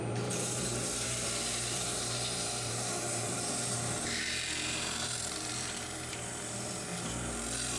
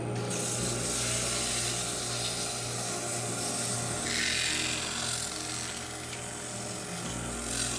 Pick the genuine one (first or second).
second